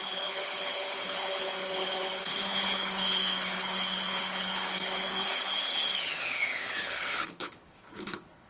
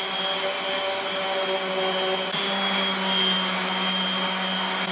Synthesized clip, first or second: first